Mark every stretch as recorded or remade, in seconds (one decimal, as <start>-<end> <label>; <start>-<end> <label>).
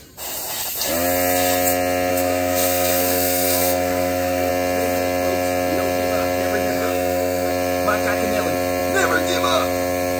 0.0-2.1 recorded; 2.1-4.5 remade; 4.5-6.7 recorded; 6.7-7.5 remade; 7.5-10.2 recorded